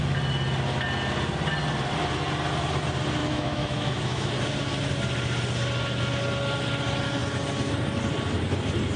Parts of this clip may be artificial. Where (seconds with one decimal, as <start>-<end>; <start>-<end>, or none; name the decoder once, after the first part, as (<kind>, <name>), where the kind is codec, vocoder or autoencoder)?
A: 3.2-4.3 (autoencoder, DAC-VAE)